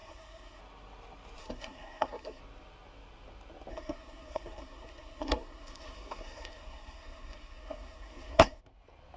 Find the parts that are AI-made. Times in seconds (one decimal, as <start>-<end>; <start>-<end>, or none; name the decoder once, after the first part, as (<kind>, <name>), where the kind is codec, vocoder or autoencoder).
0.0-0.6 (codec, SNAC); 1.4-2.4; 3.7-8.6